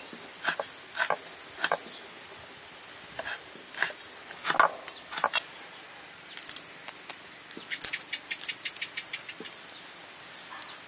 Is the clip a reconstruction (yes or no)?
no